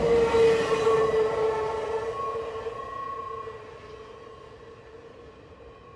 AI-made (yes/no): no